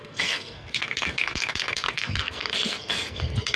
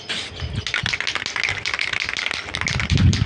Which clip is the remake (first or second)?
first